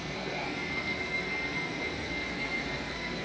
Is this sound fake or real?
fake